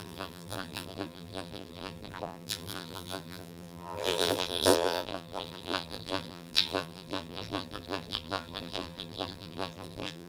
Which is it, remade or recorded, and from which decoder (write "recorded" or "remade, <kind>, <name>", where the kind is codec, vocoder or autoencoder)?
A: remade, vocoder, BigVGAN v2